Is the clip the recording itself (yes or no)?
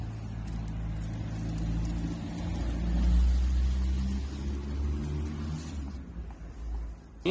yes